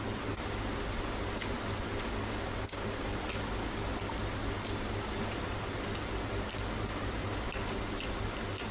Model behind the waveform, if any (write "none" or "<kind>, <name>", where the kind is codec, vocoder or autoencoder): none